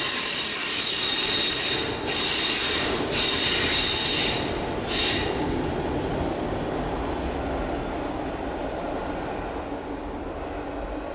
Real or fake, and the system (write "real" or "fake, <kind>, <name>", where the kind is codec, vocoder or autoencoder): real